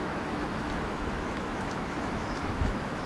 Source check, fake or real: fake